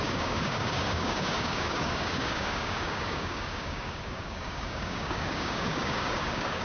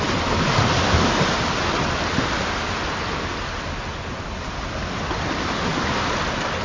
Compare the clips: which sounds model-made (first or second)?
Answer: first